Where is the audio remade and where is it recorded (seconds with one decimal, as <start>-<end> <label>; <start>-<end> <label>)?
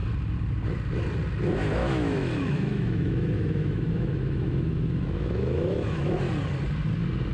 0.0-1.8 recorded; 1.8-6.2 remade; 6.2-7.3 recorded